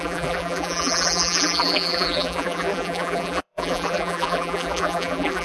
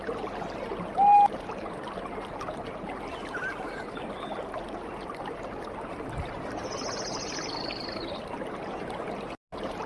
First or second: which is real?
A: second